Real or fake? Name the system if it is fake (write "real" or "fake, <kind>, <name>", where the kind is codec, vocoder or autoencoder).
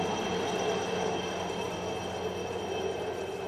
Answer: real